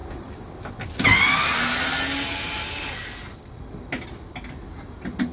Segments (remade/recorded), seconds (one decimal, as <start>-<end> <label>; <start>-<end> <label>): 0.0-5.3 recorded